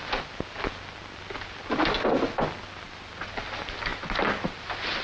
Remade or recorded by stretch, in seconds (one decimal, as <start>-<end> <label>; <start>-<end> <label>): 0.0-5.0 recorded